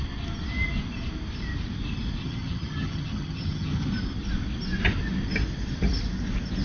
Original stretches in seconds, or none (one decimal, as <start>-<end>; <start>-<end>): 0.0-2.2; 3.9-6.6